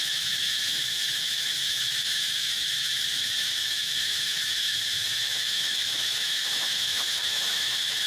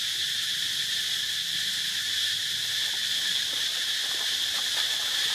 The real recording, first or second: second